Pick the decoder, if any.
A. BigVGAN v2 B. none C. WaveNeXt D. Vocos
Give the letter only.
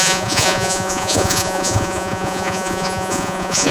D